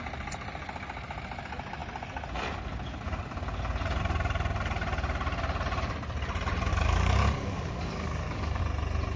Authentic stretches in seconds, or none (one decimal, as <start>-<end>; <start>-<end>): 0.0-6.7; 8.6-9.2